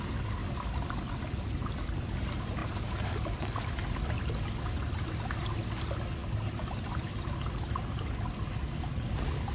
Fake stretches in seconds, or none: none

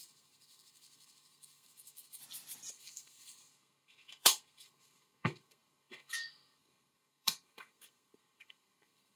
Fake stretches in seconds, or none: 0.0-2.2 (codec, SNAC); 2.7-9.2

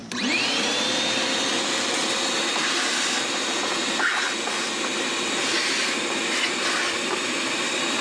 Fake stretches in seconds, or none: none

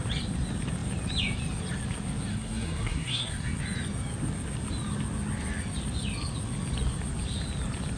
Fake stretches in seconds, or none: 2.3-3.6 (codec, SNAC)

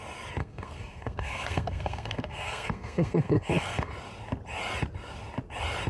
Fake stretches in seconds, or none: 0.4-3.9 (codec, SNAC)

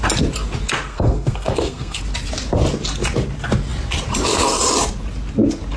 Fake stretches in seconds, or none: 0.9-2.0 (codec, SNAC)

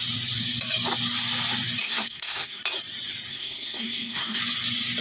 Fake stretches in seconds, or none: 1.8-2.6 (codec, SNAC); 3.3-4.4